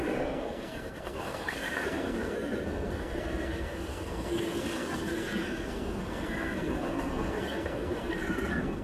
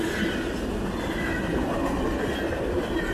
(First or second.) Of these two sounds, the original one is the second